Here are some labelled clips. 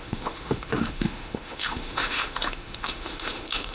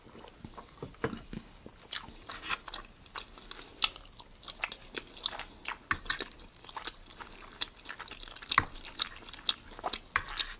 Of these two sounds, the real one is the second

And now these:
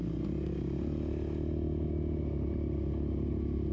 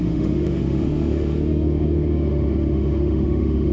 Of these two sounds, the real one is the first